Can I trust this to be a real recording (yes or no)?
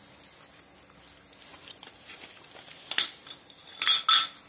yes